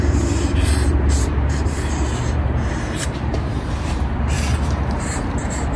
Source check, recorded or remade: remade